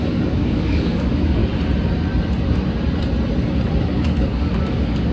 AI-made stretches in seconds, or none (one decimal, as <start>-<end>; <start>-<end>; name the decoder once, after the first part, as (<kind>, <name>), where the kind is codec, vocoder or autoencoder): 0.0-1.4 (codec, DAC); 3.8-5.1